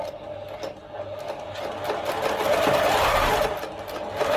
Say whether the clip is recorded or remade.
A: recorded